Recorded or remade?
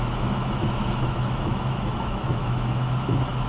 remade